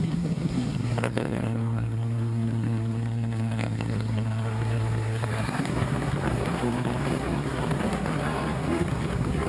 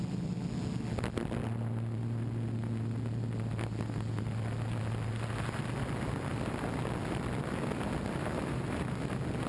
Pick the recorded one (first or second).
second